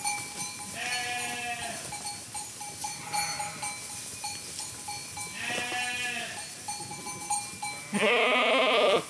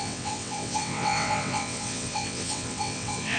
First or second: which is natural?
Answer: first